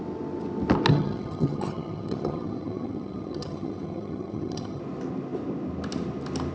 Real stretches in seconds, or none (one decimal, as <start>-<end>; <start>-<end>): 0.0-0.9; 4.8-6.5